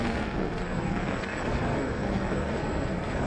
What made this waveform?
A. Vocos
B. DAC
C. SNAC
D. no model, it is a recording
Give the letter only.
C